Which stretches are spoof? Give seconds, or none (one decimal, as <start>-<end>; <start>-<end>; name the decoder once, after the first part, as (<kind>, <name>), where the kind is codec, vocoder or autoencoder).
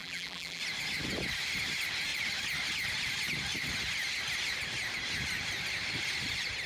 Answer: 0.0-0.6 (vocoder, BigVGAN v2)